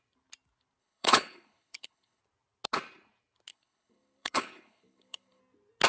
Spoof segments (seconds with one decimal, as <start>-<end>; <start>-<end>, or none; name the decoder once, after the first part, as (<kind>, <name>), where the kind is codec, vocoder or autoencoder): 0.8-2.2 (codec, HILCodec); 3.5-5.4